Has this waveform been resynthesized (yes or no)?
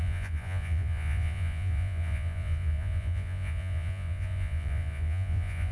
yes